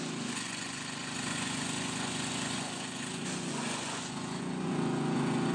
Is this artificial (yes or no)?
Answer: yes